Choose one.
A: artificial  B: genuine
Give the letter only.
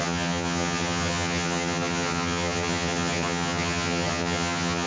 A